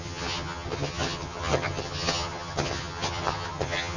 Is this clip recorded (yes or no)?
no